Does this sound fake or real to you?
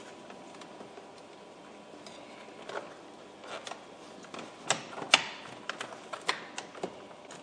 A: real